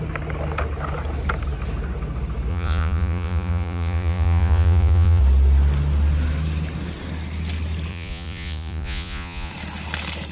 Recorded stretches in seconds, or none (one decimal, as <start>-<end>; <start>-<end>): 0.0-2.5; 5.2-7.9; 9.5-10.3